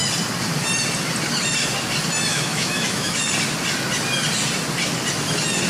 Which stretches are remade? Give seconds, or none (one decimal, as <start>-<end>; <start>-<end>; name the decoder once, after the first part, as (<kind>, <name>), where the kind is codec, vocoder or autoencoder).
2.3-3.2 (autoencoder, DAC-VAE)